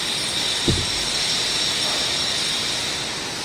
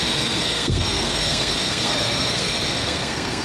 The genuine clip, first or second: first